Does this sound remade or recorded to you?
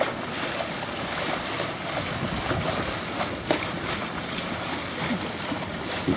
recorded